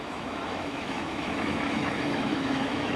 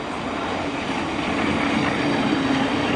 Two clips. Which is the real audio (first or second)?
second